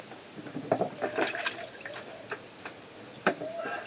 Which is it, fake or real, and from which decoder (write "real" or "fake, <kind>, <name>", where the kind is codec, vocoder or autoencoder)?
real